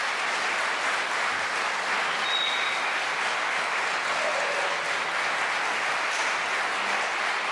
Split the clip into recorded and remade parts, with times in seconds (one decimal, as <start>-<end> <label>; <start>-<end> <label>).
0.0-7.5 recorded

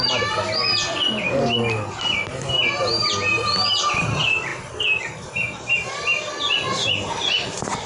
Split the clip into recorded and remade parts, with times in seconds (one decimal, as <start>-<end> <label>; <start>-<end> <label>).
0.0-7.9 recorded